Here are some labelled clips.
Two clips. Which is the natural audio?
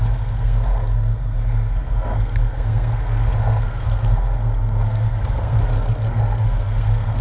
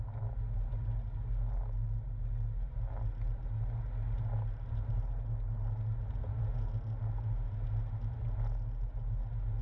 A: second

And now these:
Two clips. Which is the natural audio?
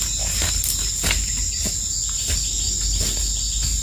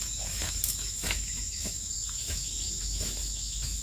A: first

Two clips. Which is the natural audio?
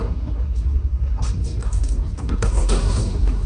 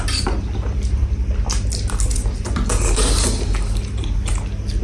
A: second